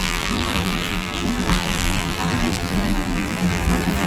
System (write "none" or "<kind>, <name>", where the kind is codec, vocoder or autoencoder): vocoder, BigVGAN v2